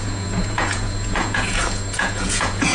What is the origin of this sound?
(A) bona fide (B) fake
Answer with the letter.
B